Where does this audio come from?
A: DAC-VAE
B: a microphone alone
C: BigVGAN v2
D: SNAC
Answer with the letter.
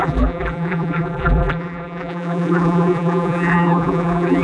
C